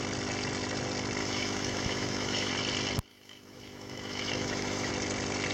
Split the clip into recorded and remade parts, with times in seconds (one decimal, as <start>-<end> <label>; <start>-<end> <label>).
0.0-1.2 recorded; 1.2-2.5 remade; 2.5-3.1 recorded; 3.1-4.9 remade; 4.9-5.5 recorded